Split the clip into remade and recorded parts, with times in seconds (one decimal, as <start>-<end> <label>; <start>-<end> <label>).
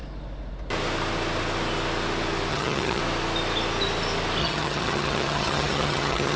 0.0-2.5 recorded; 2.5-3.0 remade; 3.0-4.4 recorded; 4.4-6.4 remade